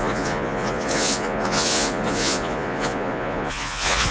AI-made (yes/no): yes